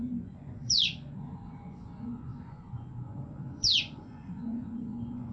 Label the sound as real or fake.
fake